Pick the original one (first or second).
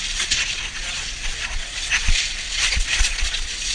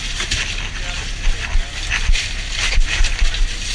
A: second